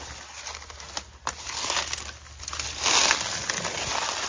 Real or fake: real